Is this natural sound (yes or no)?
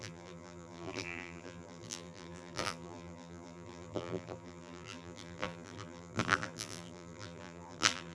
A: no